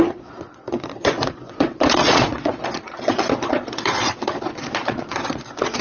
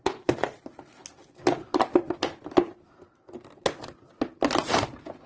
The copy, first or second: first